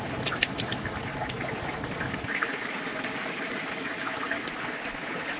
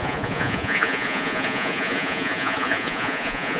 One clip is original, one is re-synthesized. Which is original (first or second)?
first